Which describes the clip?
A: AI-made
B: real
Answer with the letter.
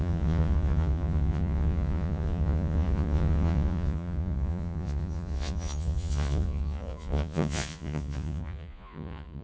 A